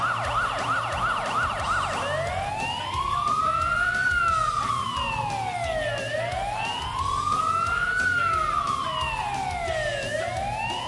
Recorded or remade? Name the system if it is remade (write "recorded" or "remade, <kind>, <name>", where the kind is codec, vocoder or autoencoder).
recorded